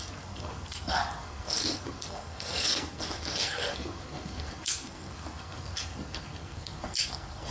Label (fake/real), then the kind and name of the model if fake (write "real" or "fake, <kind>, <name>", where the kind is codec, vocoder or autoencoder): fake, codec, SNAC